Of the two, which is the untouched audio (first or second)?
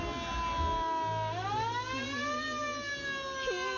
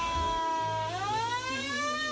first